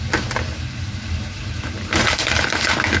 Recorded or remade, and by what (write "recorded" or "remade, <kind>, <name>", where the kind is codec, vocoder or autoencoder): remade, vocoder, BigVGAN v2